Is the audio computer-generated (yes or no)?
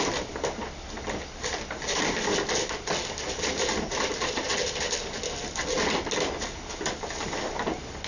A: no